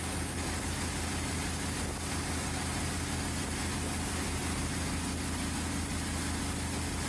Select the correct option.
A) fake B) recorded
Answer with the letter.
B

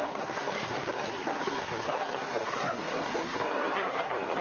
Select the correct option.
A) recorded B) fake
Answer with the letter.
B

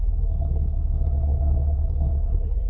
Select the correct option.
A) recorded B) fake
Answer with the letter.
B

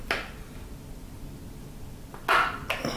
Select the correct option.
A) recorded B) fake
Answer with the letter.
A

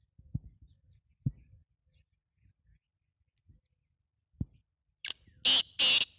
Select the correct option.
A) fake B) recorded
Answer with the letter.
B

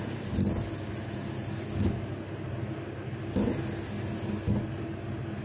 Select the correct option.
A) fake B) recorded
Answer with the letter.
B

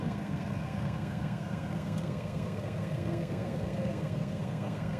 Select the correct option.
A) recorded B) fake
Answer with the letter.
B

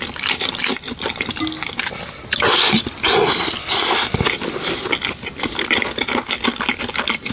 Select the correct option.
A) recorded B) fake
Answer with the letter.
A